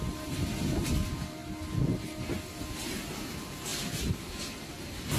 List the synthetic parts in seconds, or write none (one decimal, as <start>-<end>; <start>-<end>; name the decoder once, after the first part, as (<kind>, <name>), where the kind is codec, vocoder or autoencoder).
none

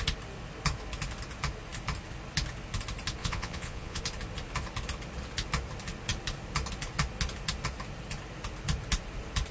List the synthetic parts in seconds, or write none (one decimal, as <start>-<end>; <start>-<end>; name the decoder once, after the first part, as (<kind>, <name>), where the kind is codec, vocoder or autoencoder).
3.2-4.0 (vocoder, Vocos)

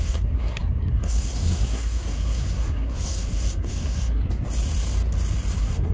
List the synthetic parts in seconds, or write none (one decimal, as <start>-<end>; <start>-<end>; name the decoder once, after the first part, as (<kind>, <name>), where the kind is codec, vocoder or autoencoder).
0.0-4.2 (codec, SNAC); 5.5-5.9

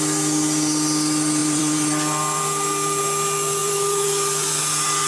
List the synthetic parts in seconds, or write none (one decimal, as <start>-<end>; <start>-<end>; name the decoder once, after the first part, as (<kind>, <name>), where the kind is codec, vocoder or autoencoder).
1.4-3.0 (vocoder, BigVGAN v2); 3.6-4.6

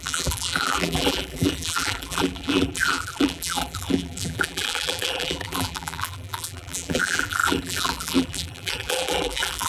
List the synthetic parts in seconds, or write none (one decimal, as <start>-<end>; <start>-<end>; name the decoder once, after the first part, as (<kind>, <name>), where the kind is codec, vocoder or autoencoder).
0.0-9.7 (vocoder, BigVGAN v2)

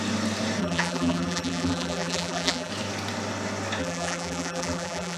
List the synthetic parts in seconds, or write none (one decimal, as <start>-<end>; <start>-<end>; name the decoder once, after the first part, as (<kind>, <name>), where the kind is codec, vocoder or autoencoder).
0.6-2.7 (vocoder, BigVGAN v2); 3.8-5.2

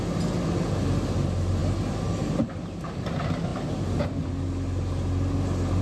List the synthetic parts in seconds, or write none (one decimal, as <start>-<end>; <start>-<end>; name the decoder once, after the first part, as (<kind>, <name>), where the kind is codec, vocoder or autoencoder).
none